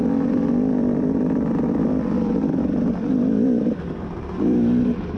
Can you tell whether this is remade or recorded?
remade